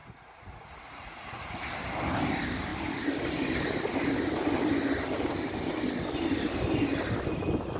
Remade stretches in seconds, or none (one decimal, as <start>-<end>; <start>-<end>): 0.0-1.7